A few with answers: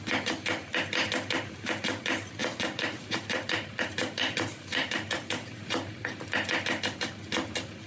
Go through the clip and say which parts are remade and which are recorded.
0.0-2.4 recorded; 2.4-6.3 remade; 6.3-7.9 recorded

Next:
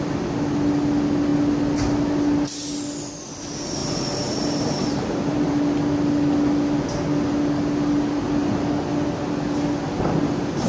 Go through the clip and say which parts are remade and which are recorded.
0.0-3.8 recorded; 3.8-5.6 remade; 5.6-10.7 recorded

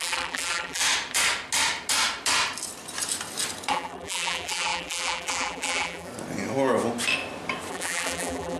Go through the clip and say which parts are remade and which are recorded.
0.0-0.8 remade; 0.8-3.7 recorded; 3.7-6.1 remade; 6.1-7.7 recorded; 7.7-8.6 remade

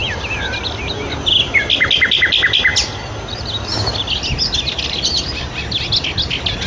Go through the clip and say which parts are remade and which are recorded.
0.0-0.6 remade; 0.6-6.7 recorded